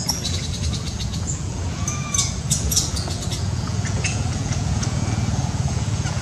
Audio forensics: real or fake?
fake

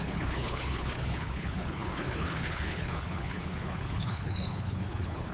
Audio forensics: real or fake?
fake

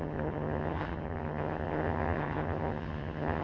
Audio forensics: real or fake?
fake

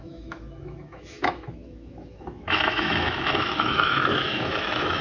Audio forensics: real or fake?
fake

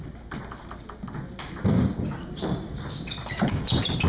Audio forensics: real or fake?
real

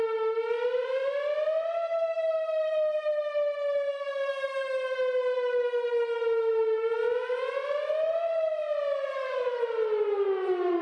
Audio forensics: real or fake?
real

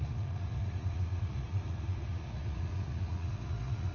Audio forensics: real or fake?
fake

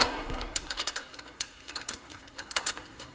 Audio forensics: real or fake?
fake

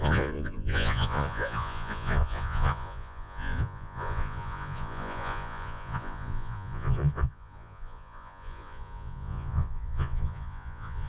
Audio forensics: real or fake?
fake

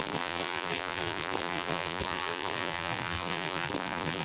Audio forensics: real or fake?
fake